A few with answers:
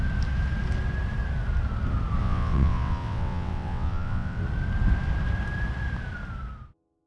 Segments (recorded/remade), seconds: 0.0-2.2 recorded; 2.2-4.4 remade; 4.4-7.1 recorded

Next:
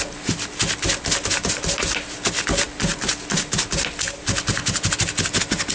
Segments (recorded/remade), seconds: 0.0-5.7 recorded

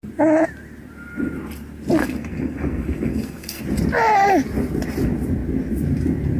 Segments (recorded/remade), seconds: 0.0-2.0 recorded; 2.0-3.6 remade; 3.6-6.4 recorded

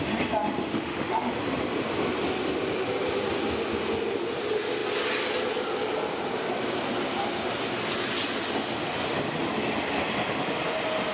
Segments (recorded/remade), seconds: 0.0-0.7 recorded; 0.7-1.3 remade; 1.3-11.1 recorded

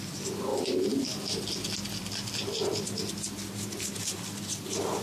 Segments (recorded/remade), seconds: 0.0-5.0 recorded